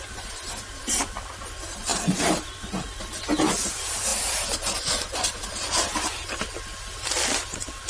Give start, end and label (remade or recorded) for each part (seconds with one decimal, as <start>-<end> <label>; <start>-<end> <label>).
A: 0.0-7.9 recorded